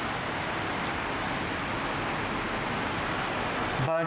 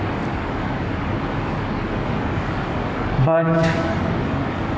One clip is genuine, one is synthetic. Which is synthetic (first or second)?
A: second